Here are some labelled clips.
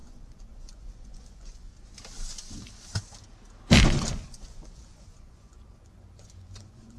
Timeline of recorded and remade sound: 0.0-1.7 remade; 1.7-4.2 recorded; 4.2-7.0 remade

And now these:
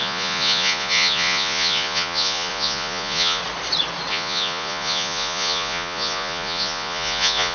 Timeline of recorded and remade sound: 0.0-3.4 remade; 3.4-4.1 recorded; 4.1-7.5 remade

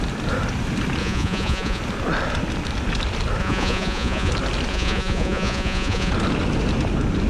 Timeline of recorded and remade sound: 0.0-1.0 recorded; 1.0-1.8 remade; 1.8-3.4 recorded; 3.4-4.3 remade; 4.3-4.7 recorded; 4.7-6.1 remade; 6.1-7.3 recorded

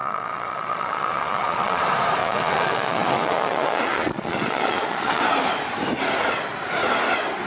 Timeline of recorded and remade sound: 0.0-1.8 remade; 1.8-2.2 recorded; 2.2-5.2 remade; 5.2-7.5 recorded

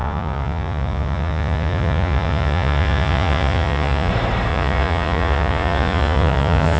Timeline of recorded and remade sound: 0.0-4.1 remade; 4.1-4.5 recorded; 4.5-6.8 remade

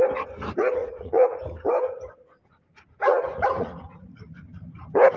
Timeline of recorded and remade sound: 0.0-0.8 recorded; 0.8-1.4 remade; 1.4-3.0 recorded; 3.0-4.2 remade; 4.2-5.2 recorded